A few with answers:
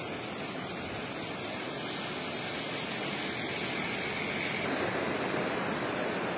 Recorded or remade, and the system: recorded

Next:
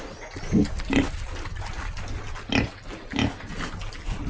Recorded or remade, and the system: recorded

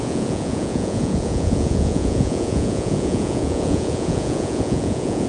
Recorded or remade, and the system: remade, vocoder, Vocos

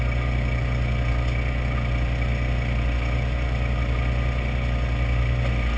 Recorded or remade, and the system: recorded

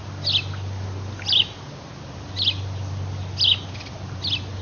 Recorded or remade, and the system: recorded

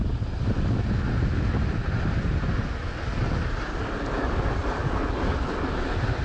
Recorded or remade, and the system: recorded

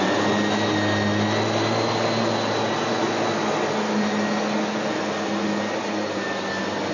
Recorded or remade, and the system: recorded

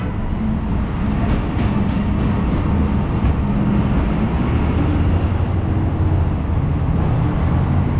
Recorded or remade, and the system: recorded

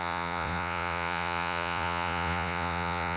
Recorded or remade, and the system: remade, vocoder, Vocos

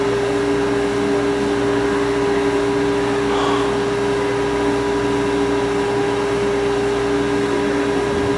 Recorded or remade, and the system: recorded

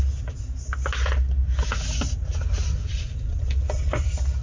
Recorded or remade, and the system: recorded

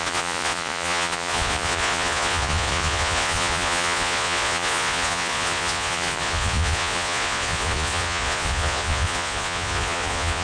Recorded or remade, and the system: remade, vocoder, Vocos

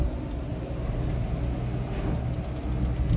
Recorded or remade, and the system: recorded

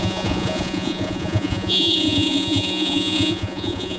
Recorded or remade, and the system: remade, vocoder, Vocos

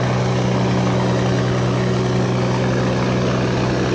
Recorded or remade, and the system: recorded